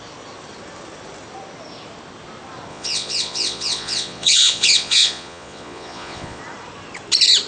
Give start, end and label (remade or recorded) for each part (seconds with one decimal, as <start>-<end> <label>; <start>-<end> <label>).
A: 0.0-2.7 recorded; 2.7-6.4 remade; 6.4-7.5 recorded